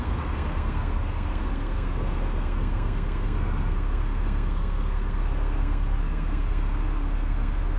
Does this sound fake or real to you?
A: fake